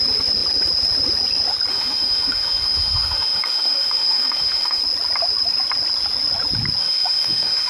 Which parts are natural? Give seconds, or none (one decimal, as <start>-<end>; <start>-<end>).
0.0-1.7; 4.8-6.8